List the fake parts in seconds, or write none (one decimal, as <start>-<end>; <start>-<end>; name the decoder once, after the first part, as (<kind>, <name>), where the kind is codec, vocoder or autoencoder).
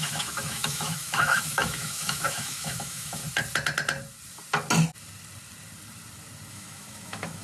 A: 0.0-3.2 (autoencoder, DAC-VAE); 6.5-7.4